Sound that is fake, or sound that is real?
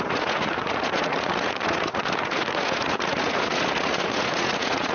fake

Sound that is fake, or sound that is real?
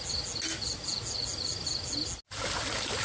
real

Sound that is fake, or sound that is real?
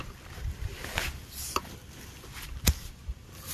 real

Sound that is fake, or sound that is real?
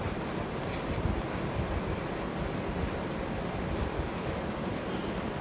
real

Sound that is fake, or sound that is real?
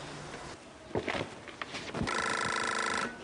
real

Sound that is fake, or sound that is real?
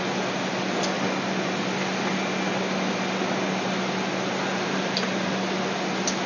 real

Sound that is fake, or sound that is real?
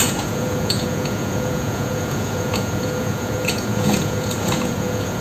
fake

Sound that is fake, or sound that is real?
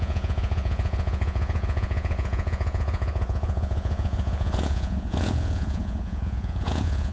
fake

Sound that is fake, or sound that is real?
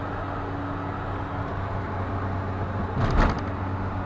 real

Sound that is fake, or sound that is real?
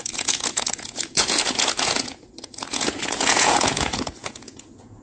fake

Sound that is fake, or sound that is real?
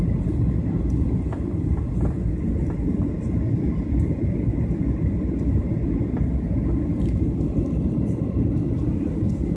real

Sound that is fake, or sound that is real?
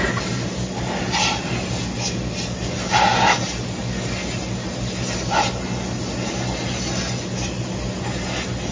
real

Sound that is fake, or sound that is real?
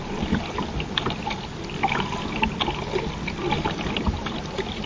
real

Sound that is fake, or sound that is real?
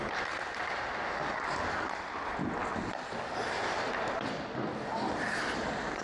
real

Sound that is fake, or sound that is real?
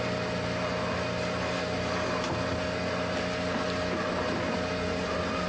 real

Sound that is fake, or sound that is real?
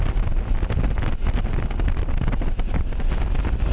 real